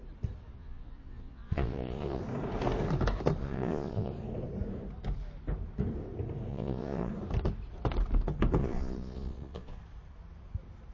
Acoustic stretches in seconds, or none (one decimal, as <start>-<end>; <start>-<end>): 0.0-0.5; 2.2-3.4; 4.1-6.5; 7.1-8.6; 9.8-10.9